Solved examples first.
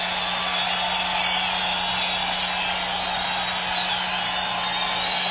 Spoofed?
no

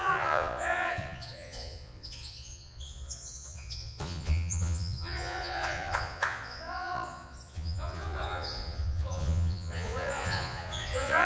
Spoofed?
yes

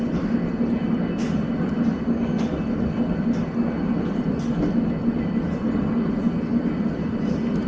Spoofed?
no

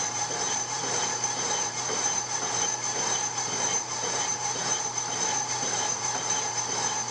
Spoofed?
yes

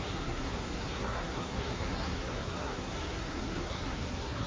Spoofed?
yes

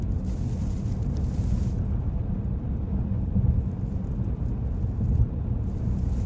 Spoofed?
no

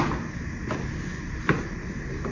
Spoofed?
no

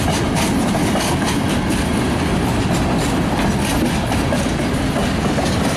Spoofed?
no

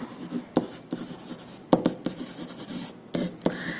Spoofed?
no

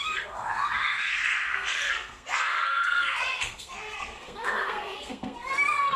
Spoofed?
yes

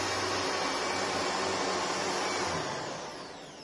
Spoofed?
no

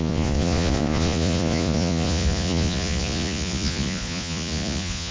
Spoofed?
yes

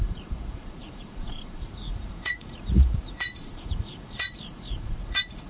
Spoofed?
yes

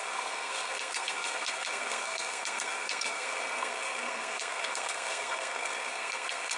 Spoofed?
yes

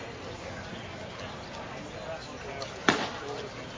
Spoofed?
no